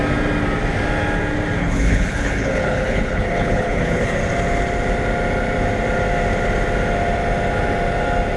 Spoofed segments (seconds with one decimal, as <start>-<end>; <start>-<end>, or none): 1.6-4.2

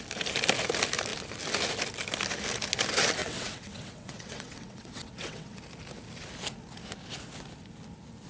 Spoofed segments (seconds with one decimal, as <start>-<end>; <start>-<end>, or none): 3.2-5.6

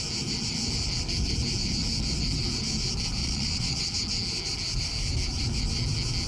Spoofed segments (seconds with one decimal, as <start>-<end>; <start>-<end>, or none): 3.2-3.8

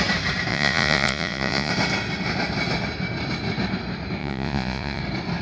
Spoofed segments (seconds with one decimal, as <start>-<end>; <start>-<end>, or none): 0.5-1.7; 4.2-5.0

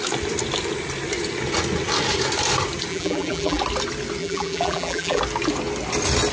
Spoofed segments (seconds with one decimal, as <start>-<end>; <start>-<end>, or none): 2.9-3.6; 4.2-5.2

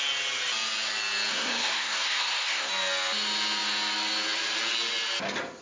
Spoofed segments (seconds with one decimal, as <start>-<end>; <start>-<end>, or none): 1.3-2.7

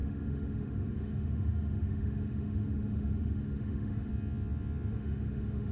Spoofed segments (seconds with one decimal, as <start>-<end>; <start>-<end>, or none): 0.0-4.1; 4.9-5.7